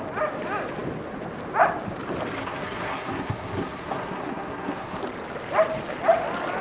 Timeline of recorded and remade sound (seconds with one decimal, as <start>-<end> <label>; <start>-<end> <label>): 0.0-2.4 recorded; 2.4-5.0 remade; 5.0-6.6 recorded